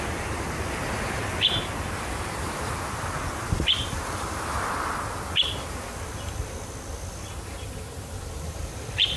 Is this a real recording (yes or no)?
yes